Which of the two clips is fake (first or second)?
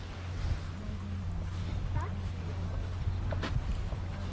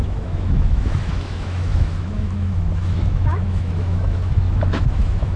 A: second